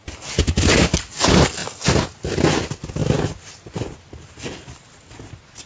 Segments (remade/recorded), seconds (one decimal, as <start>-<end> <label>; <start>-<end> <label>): 0.0-5.7 recorded